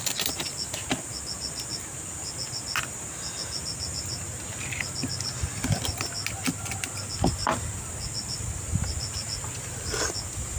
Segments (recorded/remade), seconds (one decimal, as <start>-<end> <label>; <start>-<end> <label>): 0.0-10.6 recorded